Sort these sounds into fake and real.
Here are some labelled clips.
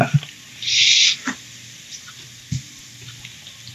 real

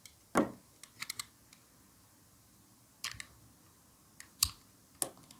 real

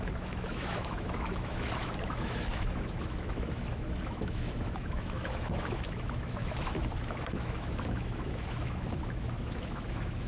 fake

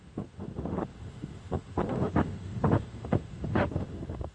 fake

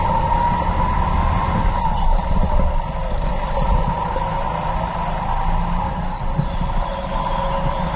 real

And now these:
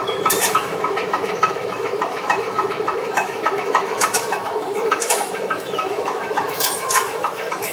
fake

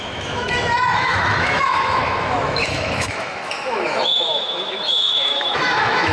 fake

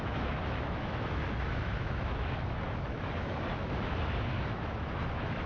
fake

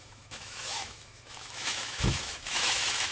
fake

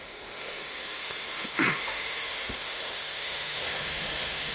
fake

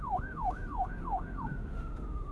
fake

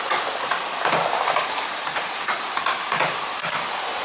real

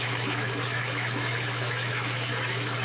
fake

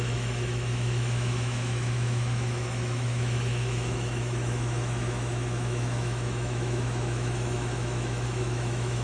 fake